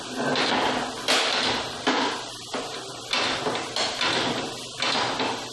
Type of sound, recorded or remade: recorded